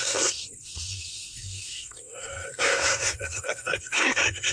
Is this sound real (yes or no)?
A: no